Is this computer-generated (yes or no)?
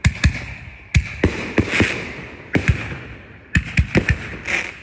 no